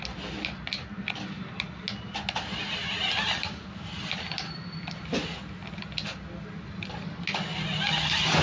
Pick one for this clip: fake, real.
real